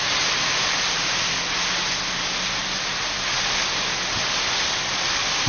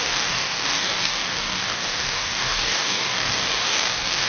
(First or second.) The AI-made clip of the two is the second